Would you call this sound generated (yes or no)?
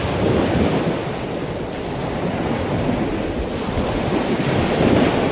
no